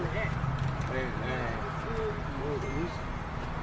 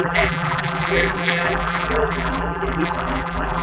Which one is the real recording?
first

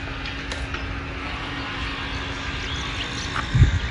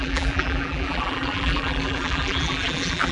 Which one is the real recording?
first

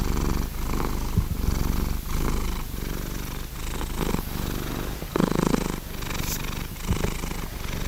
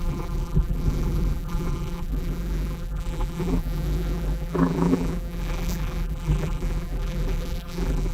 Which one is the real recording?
first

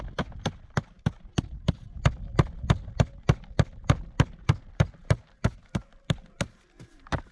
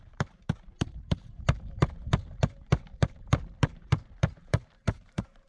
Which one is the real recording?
first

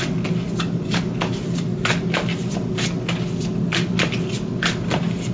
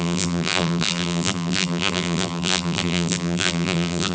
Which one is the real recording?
first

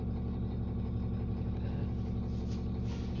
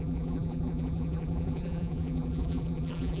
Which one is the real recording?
first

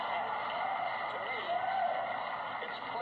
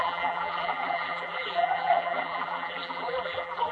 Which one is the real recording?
first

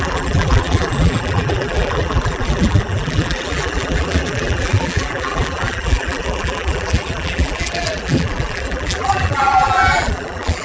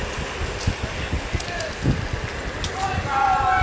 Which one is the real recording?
second